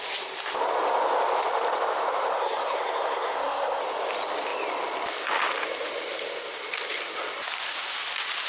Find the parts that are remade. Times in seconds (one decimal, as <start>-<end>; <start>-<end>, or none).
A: 2.3-3.8